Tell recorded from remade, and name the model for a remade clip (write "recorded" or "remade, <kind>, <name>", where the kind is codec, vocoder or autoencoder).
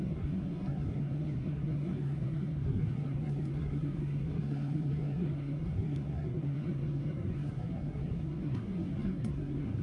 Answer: remade, codec, SNAC